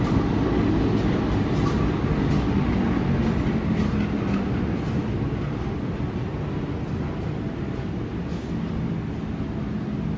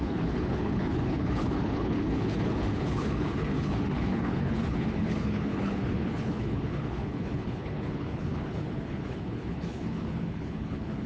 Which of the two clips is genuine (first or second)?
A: first